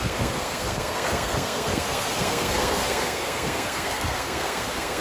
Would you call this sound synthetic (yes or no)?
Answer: yes